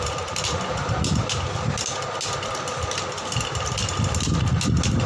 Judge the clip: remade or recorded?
recorded